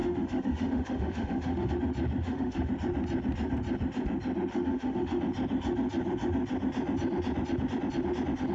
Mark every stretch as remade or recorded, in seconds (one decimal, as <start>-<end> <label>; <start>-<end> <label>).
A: 0.0-1.7 remade; 1.7-2.2 recorded; 2.2-2.7 remade; 2.7-4.5 recorded; 4.5-5.2 remade; 5.2-8.5 recorded